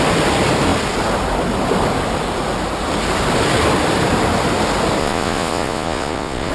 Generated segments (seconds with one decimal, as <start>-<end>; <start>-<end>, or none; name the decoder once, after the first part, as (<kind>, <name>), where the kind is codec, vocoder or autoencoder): 5.0-6.5 (vocoder, Vocos)